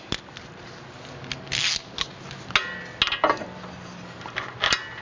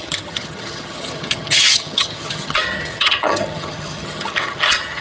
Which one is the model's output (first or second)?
second